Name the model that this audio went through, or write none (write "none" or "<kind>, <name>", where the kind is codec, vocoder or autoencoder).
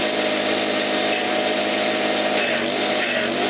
none